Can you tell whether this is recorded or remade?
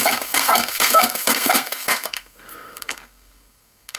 remade